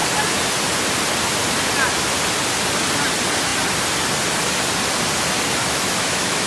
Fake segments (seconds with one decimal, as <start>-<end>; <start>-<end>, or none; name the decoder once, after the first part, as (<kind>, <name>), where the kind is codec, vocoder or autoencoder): 5.6-6.5 (autoencoder, DAC-VAE)